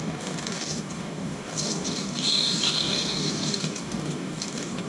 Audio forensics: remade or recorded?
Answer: remade